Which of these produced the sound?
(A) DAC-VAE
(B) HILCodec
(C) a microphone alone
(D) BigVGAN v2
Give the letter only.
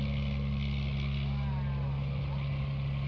C